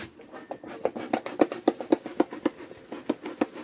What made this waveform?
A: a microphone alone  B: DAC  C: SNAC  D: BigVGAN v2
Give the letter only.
A